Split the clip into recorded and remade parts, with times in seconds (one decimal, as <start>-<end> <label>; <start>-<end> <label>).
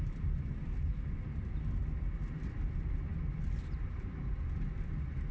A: 0.0-5.3 recorded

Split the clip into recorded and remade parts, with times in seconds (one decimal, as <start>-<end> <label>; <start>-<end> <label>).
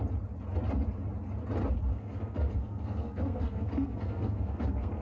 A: 0.0-1.9 recorded; 1.9-5.0 remade